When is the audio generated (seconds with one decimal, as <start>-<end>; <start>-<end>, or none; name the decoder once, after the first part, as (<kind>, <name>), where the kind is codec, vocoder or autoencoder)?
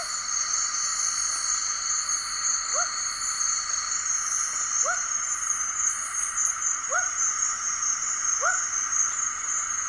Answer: 0.0-0.9 (vocoder, BigVGAN v2); 2.1-2.7; 4.8-8.2